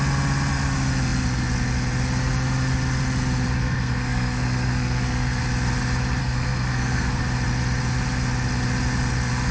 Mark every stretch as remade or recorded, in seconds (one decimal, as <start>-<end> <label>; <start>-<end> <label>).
0.0-3.6 recorded; 3.6-5.4 remade; 5.4-6.2 recorded; 6.2-7.2 remade; 7.2-9.5 recorded